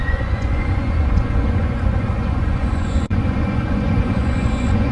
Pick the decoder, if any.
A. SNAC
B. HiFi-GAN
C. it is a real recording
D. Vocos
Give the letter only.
D